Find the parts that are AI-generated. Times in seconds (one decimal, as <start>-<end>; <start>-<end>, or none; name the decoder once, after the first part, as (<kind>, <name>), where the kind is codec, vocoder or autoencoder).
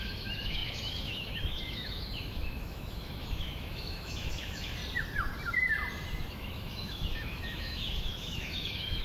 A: 0.0-4.8 (autoencoder, DAC-VAE); 6.3-9.0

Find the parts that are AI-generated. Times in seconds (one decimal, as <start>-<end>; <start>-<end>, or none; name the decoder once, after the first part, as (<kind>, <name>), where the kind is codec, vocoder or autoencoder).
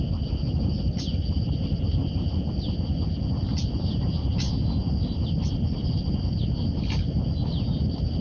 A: none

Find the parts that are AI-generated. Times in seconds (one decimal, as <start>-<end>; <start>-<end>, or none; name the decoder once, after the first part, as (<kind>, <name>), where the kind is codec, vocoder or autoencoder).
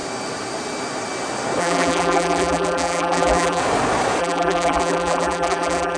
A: 1.6-3.6 (vocoder, BigVGAN v2); 4.2-6.0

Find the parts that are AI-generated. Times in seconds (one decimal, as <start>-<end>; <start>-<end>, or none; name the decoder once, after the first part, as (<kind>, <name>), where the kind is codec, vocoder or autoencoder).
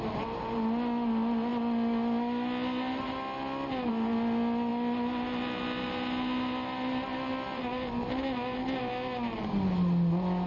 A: none